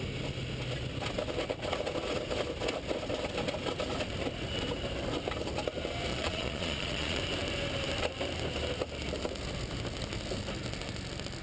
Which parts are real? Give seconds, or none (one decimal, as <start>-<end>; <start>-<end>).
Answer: 0.0-6.1; 7.2-11.4

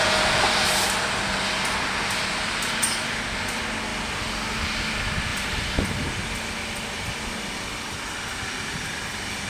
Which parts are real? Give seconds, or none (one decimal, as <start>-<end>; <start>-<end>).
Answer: 0.0-9.5

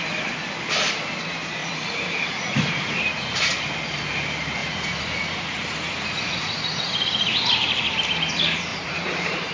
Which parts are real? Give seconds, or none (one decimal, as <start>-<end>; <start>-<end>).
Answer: 0.0-1.6; 3.6-4.6; 6.9-8.7

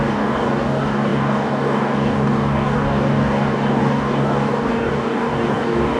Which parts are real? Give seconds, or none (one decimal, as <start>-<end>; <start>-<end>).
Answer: none

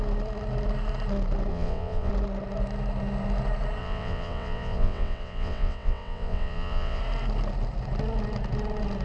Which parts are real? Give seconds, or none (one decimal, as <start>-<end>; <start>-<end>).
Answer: 0.0-1.5; 2.1-3.8; 7.0-9.0

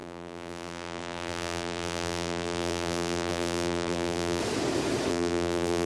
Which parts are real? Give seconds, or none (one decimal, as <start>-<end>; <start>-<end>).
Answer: 4.4-5.1

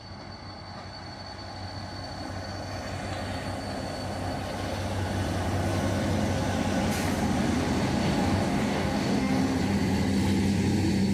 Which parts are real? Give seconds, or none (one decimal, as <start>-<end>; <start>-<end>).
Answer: 0.0-8.0; 9.4-11.1

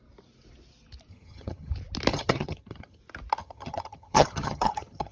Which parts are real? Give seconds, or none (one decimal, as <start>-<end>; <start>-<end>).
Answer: 0.0-1.1; 1.7-2.1; 3.0-3.4